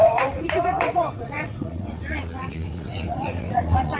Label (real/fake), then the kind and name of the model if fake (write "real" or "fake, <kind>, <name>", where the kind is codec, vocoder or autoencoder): fake, vocoder, WaveNeXt